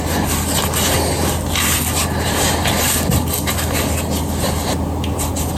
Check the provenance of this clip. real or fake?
real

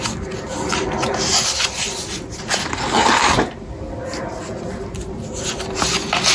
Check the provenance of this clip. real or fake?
real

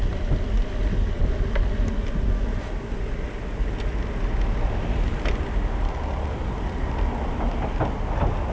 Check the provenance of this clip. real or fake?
real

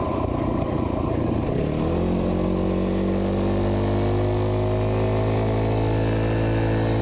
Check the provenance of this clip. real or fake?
real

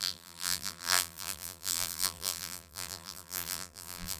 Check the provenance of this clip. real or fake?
fake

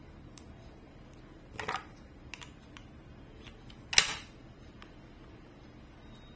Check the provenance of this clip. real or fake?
real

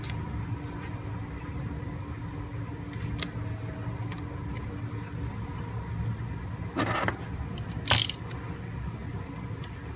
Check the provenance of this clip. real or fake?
real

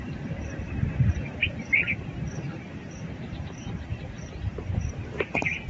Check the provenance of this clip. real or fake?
fake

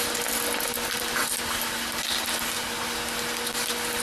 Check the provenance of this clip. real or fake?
real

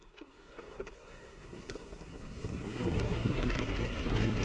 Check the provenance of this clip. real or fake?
fake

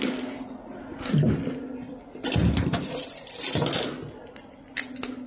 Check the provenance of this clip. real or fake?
real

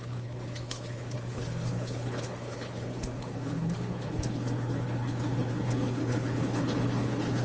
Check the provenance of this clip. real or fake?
fake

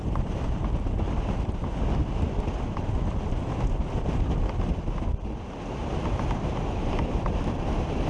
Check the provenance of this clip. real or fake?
real